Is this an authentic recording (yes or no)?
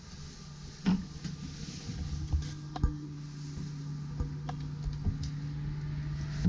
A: yes